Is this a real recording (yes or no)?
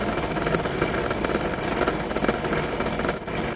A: yes